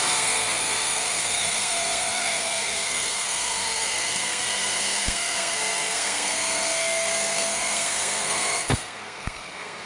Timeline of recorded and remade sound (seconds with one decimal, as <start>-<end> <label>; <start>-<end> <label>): 0.0-9.9 remade